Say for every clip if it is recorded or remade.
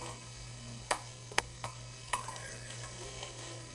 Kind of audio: remade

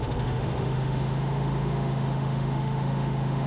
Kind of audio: remade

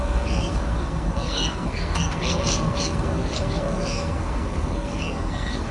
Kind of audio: remade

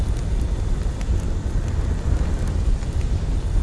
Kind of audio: remade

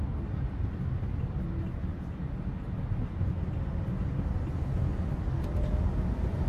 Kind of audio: recorded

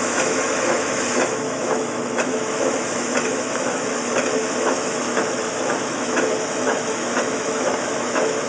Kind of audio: remade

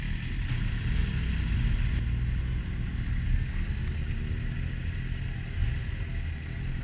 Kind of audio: recorded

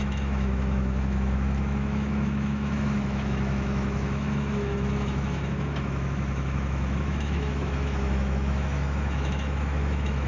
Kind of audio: remade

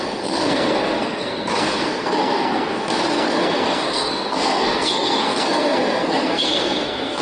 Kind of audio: remade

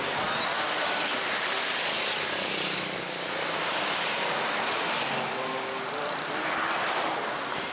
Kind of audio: recorded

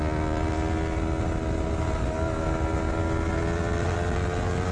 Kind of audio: recorded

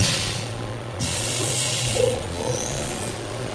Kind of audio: remade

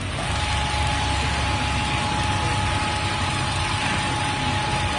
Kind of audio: recorded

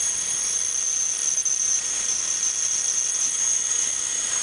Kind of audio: recorded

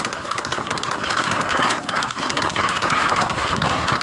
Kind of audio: remade